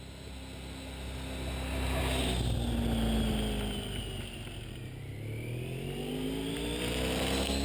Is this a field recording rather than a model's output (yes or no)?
yes